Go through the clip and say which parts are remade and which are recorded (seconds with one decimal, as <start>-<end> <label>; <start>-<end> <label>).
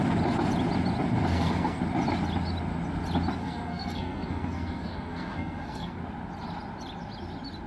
0.0-1.3 recorded; 1.3-1.8 remade; 1.8-3.4 recorded; 3.4-6.0 remade; 6.0-7.7 recorded